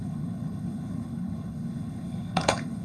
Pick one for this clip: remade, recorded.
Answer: remade